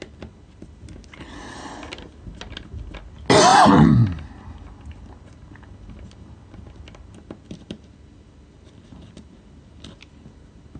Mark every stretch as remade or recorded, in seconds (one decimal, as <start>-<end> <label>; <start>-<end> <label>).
0.0-10.8 recorded